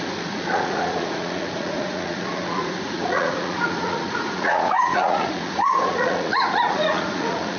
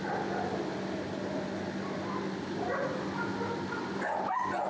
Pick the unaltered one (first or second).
second